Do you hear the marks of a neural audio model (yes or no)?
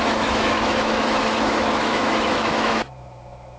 yes